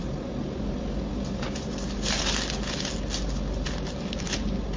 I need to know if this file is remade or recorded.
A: recorded